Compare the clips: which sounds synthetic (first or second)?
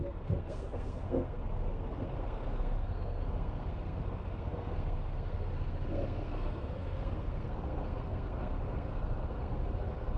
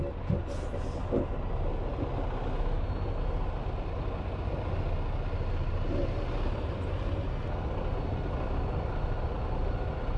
first